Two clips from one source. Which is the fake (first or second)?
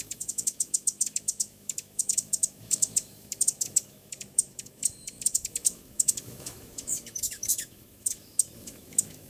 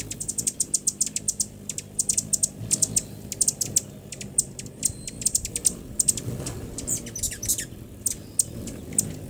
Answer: first